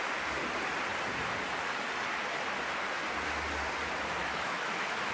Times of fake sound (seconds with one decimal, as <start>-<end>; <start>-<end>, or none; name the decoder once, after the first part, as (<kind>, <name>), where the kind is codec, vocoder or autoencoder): 4.2-5.1 (autoencoder, DAC-VAE)